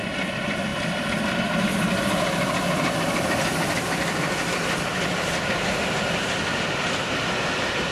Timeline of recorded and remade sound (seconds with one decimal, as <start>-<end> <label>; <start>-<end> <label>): 0.0-7.9 recorded